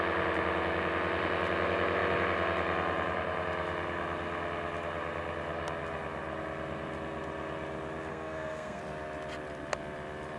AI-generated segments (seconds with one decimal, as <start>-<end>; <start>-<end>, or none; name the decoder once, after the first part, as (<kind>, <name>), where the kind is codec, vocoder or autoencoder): 8.1-8.8 (codec, SNAC)